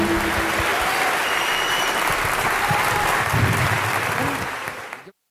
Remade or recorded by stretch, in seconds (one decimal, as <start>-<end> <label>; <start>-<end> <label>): 0.0-0.7 recorded; 0.7-3.9 remade; 3.9-5.3 recorded